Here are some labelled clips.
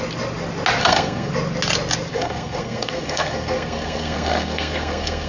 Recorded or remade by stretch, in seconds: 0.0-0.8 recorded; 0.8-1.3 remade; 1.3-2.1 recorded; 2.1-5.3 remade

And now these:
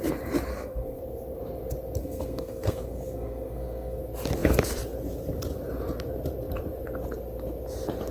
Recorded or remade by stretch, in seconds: 0.0-0.5 recorded; 0.5-1.0 remade; 1.0-2.0 recorded; 2.0-4.0 remade; 4.0-8.1 recorded